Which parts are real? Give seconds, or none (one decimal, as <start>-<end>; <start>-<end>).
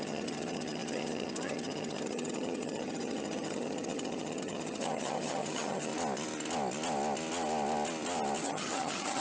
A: 5.9-8.4